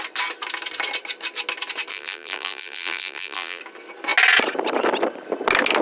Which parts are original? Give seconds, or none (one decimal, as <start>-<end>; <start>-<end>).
0.0-1.9; 3.6-5.8